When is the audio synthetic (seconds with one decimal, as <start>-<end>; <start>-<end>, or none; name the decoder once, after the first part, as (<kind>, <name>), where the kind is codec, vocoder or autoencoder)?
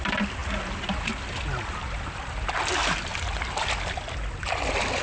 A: none